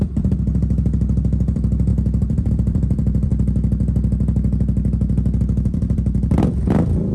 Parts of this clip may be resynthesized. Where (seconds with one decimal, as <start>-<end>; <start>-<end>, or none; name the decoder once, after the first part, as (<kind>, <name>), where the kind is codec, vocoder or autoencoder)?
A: 0.0-3.3 (vocoder, BigVGAN v2); 5.4-7.1